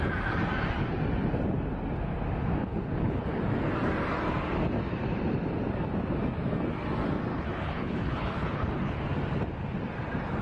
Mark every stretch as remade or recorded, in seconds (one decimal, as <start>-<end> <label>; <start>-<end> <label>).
0.0-2.6 recorded; 2.6-3.4 remade; 3.4-7.3 recorded; 7.3-9.0 remade; 9.0-10.4 recorded